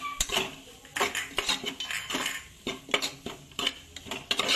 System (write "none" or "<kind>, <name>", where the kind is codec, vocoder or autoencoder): none